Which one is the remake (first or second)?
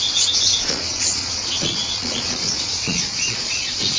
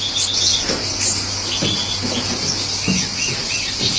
first